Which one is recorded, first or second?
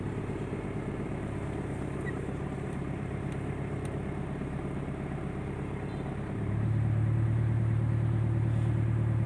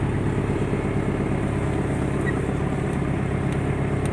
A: second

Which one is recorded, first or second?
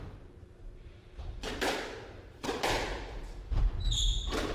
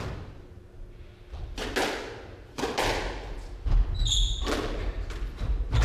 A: second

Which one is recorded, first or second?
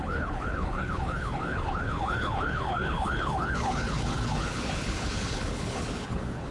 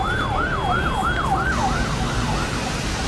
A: second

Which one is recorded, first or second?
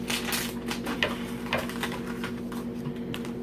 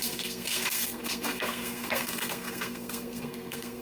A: first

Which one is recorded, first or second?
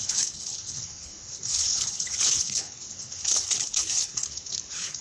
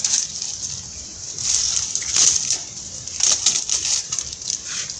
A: second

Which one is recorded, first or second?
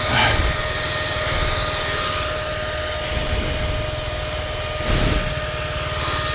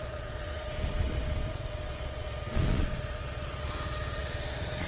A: first